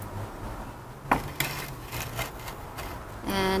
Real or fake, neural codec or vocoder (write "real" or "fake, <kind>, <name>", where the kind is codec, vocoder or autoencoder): real